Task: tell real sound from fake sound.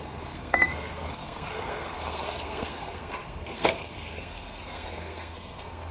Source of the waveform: fake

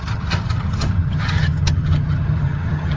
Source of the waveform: fake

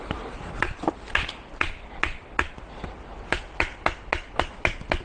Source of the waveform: real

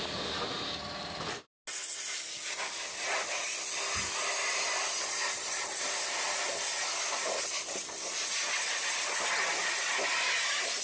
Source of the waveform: real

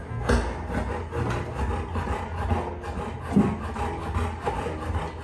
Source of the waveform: real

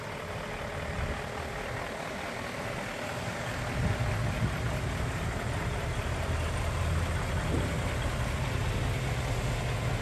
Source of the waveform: real